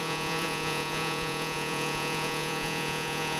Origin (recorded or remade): remade